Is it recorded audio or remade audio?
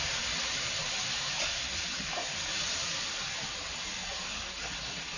recorded